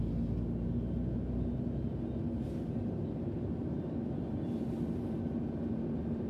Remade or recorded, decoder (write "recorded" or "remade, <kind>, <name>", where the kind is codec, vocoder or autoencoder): recorded